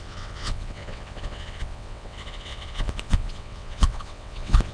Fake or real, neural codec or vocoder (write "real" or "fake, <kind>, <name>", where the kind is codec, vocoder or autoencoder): fake, vocoder, WaveNeXt